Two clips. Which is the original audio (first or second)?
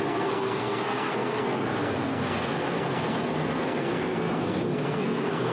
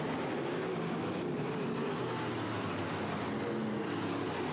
second